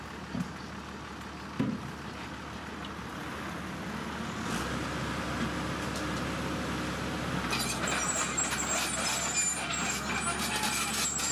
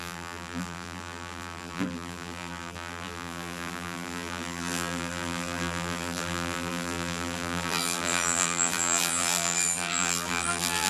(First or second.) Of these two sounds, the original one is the first